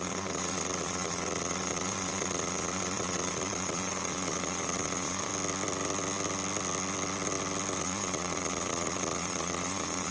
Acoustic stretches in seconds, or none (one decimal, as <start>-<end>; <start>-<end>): 5.3-7.8

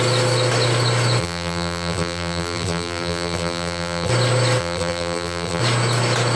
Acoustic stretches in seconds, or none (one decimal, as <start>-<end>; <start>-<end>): 0.0-1.2; 4.1-4.6; 5.6-6.4

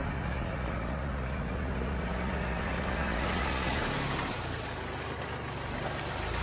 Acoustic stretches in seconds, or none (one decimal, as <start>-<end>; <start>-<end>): 3.8-6.4

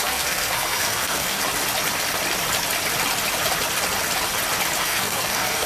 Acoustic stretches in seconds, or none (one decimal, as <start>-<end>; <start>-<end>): 1.4-4.8

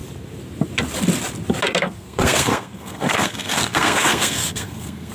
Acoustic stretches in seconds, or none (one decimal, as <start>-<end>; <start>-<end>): 0.0-1.8

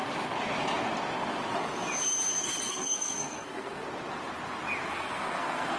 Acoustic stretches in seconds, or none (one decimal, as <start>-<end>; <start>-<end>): 0.0-2.7; 3.8-4.9

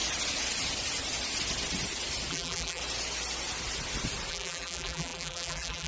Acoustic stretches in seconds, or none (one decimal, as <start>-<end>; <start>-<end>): 0.0-2.3; 2.8-4.3

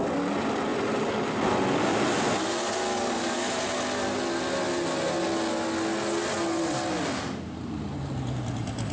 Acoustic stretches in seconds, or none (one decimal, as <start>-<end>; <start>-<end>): 0.0-8.9